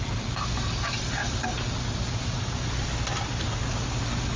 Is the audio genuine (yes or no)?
yes